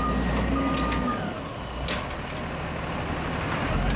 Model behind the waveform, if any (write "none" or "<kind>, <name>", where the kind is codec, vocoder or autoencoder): none